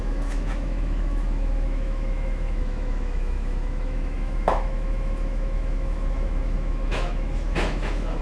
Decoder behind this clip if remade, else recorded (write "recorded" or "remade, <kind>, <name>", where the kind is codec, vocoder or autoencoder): remade, autoencoder, DAC-VAE